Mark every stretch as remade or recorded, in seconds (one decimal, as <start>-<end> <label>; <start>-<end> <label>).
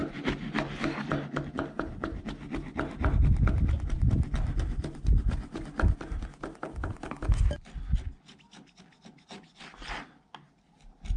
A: 0.0-11.2 recorded